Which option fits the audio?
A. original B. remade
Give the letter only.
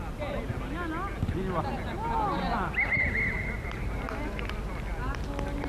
A